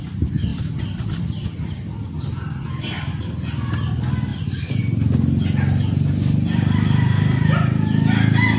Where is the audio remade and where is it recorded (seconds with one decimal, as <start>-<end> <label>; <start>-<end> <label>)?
0.0-8.6 recorded